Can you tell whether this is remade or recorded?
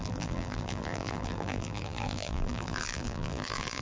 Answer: remade